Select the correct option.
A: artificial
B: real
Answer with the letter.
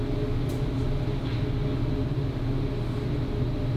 B